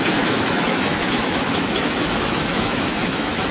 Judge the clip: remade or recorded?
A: remade